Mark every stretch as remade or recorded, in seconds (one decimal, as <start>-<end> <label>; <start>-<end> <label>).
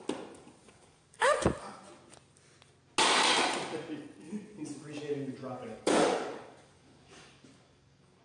0.0-0.6 recorded; 0.6-1.5 remade; 1.5-5.4 recorded; 5.4-8.2 remade